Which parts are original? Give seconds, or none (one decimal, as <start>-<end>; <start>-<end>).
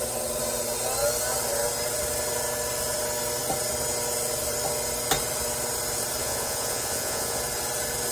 0.0-6.2; 7.4-8.1